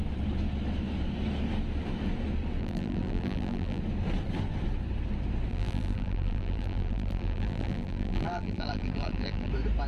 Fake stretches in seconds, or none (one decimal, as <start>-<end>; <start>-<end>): 2.6-3.8; 5.5-9.5